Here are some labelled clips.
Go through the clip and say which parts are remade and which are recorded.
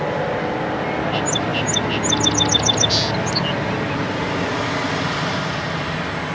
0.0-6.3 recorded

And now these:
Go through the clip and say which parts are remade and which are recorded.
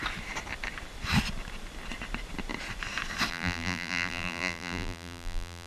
0.0-3.3 recorded; 3.3-5.7 remade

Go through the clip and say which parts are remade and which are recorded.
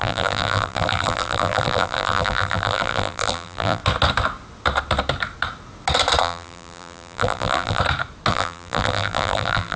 0.0-3.8 remade; 3.8-6.2 recorded; 6.2-7.8 remade; 7.8-8.3 recorded; 8.3-9.8 remade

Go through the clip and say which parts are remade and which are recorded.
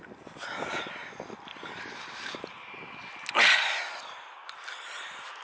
0.0-5.4 recorded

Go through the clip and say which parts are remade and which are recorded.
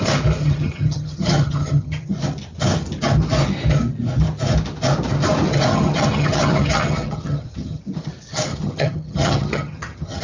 0.0-0.4 recorded; 0.4-2.1 remade; 2.1-5.7 recorded; 5.7-7.8 remade; 7.8-8.5 recorded; 8.5-10.2 remade